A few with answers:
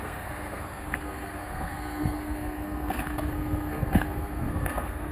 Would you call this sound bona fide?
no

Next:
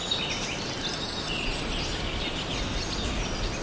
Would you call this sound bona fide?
yes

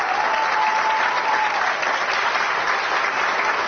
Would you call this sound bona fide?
yes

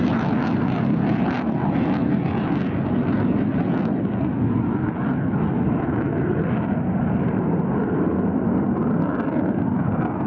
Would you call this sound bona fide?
yes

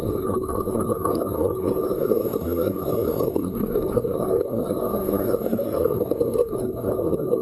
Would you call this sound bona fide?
no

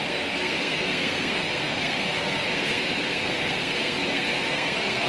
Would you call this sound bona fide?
no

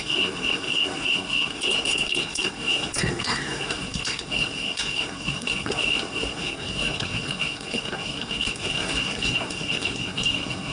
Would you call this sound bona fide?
no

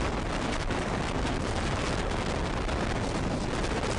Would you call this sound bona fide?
yes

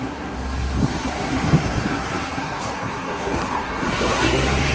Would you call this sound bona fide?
no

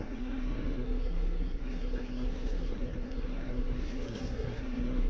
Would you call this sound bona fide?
no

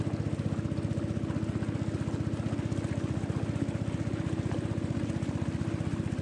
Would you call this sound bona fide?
yes